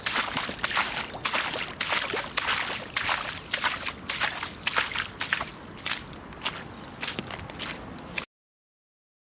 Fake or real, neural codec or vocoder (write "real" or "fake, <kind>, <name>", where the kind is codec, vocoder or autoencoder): real